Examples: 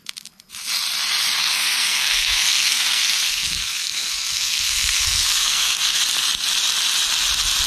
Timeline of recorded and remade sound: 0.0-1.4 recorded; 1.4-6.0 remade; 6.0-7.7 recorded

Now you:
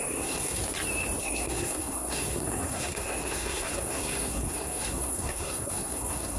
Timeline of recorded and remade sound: 0.0-0.6 remade; 0.6-1.2 recorded; 1.2-6.4 remade

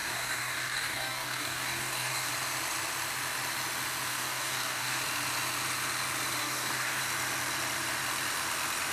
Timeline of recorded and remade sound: 0.0-2.3 remade; 2.3-4.1 recorded; 4.1-5.0 remade; 5.0-6.4 recorded; 6.4-7.0 remade; 7.0-8.9 recorded

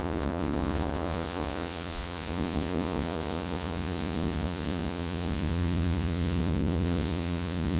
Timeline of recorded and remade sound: 0.0-7.8 remade

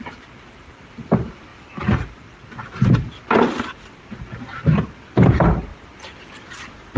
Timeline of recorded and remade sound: 0.0-1.5 remade; 1.5-5.3 recorded; 5.3-5.7 remade; 5.7-7.0 recorded

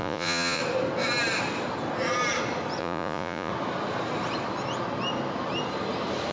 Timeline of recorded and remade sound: 0.0-0.6 remade; 0.6-2.8 recorded; 2.8-3.5 remade; 3.5-6.3 recorded

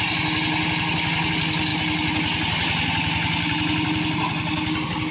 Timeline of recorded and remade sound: 0.0-5.1 recorded

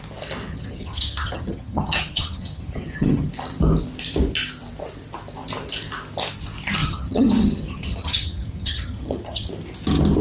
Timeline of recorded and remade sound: 0.0-0.5 recorded; 0.5-3.3 remade; 3.3-6.8 recorded; 6.8-9.5 remade; 9.5-10.2 recorded